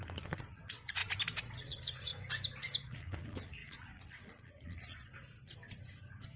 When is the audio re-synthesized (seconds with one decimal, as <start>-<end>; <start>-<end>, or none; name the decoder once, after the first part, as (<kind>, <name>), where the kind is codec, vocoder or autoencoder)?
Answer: 0.0-1.0 (vocoder, Vocos); 1.6-2.1; 2.8-5.6